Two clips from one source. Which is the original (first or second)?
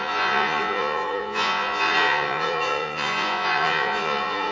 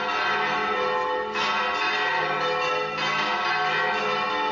second